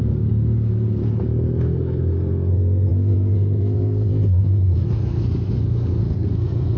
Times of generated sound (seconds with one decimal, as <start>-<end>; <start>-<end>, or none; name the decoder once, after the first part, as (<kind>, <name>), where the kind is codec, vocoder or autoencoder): 0.0-1.0 (codec, SNAC); 1.6-6.8